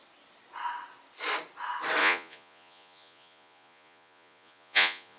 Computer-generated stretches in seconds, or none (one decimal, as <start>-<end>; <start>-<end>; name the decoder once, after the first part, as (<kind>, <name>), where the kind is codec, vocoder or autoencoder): 2.0-5.2 (vocoder, Vocos)